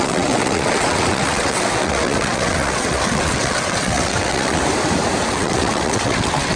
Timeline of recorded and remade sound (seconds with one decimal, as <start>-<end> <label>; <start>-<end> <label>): 0.0-4.6 remade; 4.6-5.2 recorded; 5.2-6.6 remade